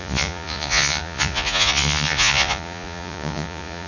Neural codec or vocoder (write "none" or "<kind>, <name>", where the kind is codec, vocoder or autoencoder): vocoder, Vocos